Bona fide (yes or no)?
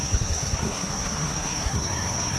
no